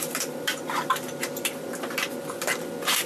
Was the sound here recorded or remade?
remade